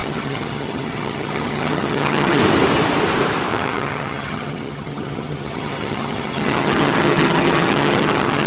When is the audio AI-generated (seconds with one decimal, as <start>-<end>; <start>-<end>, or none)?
0.0-2.4; 3.5-8.5